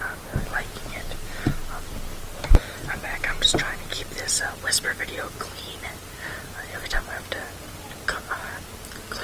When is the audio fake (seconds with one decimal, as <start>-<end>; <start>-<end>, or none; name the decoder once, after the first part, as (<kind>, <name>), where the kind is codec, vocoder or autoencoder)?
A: none

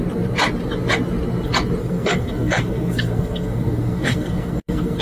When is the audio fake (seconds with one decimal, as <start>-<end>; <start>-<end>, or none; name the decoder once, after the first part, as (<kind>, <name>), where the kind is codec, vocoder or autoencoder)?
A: 1.8-5.0 (codec, SNAC)